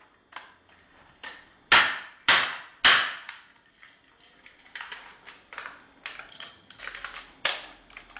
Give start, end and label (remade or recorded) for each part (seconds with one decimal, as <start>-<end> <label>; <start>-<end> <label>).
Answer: 0.0-6.3 recorded; 6.3-6.8 remade; 6.8-8.2 recorded